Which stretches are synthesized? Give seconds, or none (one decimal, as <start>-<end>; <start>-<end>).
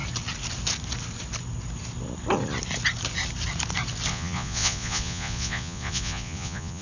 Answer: 4.1-6.8